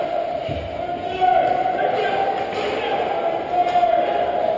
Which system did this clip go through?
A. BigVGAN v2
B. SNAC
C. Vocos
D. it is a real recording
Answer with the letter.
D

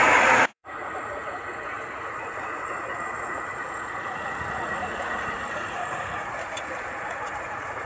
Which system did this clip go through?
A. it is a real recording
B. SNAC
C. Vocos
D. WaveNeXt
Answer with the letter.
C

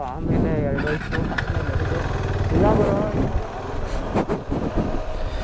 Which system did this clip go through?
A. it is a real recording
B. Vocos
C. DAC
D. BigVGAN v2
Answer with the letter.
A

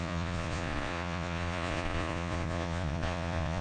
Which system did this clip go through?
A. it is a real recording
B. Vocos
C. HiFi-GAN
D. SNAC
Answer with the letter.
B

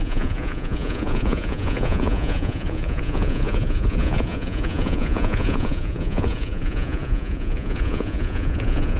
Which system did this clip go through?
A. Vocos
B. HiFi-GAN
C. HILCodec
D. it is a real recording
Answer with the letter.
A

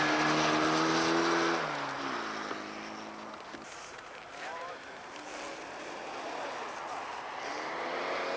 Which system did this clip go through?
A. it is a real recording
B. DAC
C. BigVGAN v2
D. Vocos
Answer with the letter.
A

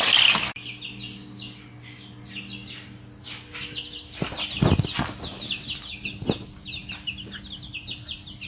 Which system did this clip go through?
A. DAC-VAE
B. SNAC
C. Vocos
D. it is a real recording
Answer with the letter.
D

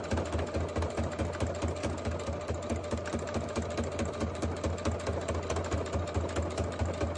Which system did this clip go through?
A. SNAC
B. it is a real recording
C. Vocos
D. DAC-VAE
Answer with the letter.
B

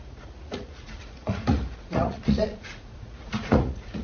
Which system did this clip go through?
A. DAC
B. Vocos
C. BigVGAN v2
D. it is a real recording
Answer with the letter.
B